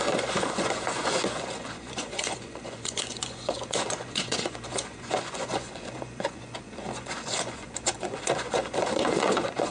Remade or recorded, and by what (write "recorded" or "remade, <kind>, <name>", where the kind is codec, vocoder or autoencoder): remade, vocoder, Vocos